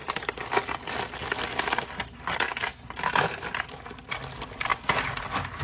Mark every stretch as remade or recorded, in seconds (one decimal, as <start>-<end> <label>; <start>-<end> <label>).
0.0-5.6 recorded